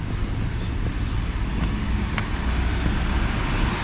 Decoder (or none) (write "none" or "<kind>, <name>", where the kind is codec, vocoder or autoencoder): none